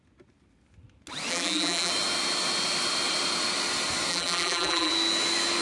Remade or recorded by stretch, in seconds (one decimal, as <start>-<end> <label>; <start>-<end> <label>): 0.0-1.3 recorded; 1.3-1.9 remade; 1.9-4.1 recorded; 4.1-4.9 remade; 4.9-5.6 recorded